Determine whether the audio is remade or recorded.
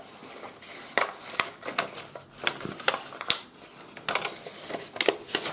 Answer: recorded